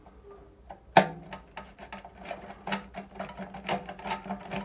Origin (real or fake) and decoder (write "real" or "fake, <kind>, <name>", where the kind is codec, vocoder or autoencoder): real